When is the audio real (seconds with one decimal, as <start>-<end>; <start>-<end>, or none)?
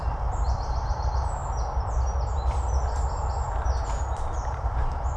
1.4-4.0